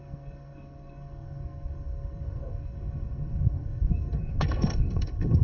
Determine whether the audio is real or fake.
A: fake